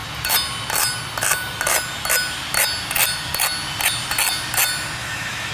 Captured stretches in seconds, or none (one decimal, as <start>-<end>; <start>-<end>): 0.0-5.0